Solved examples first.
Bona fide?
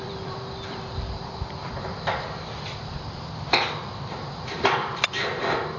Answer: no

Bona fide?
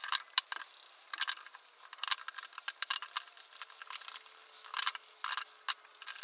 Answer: yes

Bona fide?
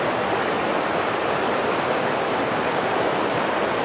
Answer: yes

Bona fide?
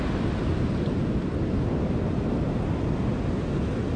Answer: yes